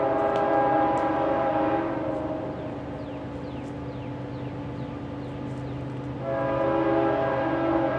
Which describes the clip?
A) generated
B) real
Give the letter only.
B